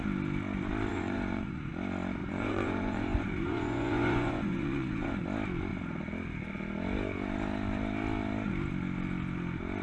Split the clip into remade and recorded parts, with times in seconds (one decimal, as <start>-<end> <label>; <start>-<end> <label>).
0.0-0.9 recorded; 0.9-1.7 remade; 1.7-2.2 recorded; 2.2-5.2 remade; 5.2-9.8 recorded

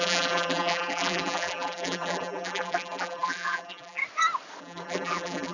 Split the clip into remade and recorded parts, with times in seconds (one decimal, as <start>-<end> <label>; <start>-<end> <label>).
0.0-4.0 remade; 4.0-4.6 recorded; 4.6-5.5 remade

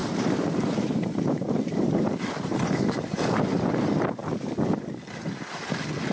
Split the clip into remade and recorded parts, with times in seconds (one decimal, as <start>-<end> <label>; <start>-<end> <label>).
0.0-3.7 remade; 3.7-6.1 recorded